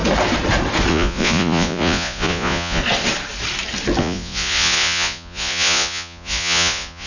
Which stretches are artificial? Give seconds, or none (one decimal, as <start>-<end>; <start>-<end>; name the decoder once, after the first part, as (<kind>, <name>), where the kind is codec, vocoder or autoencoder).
0.9-2.8 (vocoder, Vocos); 4.0-7.1